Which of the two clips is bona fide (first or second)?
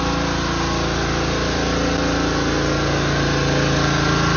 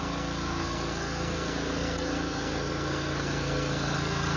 first